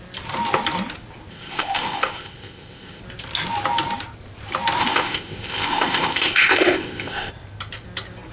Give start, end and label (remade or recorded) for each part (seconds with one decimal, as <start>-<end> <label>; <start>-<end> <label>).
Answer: 0.0-1.3 recorded; 1.3-3.0 remade; 3.0-4.8 recorded; 4.8-7.3 remade; 7.3-8.3 recorded